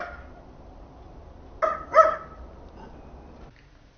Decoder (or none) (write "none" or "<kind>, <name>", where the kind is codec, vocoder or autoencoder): none